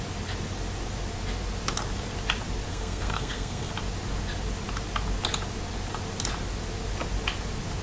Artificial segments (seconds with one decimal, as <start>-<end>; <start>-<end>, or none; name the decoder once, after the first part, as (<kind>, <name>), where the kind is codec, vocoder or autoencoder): 2.7-3.7 (codec, SNAC)